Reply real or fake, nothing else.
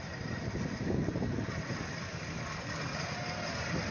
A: real